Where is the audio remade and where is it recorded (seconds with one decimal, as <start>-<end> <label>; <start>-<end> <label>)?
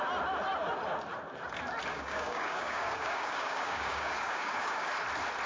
0.0-1.9 recorded; 1.9-4.9 remade; 4.9-5.5 recorded